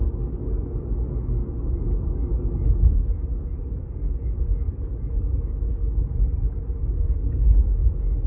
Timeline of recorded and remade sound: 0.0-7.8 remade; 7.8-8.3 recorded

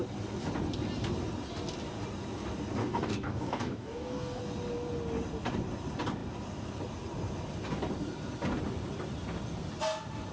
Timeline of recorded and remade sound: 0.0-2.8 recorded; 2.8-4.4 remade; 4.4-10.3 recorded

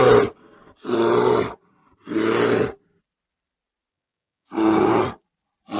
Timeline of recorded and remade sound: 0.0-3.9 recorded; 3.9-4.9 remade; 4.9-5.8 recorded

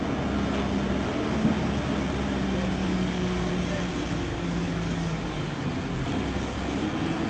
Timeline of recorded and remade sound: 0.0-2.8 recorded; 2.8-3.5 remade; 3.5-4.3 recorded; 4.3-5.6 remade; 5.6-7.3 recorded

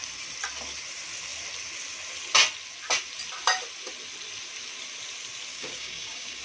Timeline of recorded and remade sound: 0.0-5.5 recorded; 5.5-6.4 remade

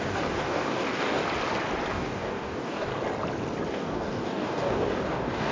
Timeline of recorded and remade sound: 0.0-1.2 remade; 1.2-1.9 recorded; 1.9-2.9 remade; 2.9-3.7 recorded; 3.7-5.5 remade

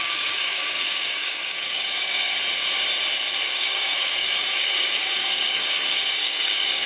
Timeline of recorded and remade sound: 0.0-2.3 remade; 2.3-3.4 recorded; 3.4-6.9 remade